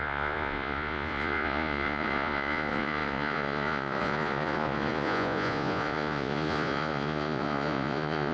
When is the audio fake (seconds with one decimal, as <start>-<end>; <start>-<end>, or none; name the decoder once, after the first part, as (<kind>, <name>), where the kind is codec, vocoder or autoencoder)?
0.0-8.3 (vocoder, Vocos)